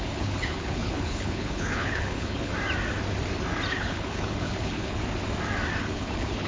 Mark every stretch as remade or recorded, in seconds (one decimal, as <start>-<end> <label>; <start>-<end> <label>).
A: 0.0-2.5 remade; 2.5-3.7 recorded; 3.7-5.0 remade; 5.0-5.8 recorded; 5.8-6.5 remade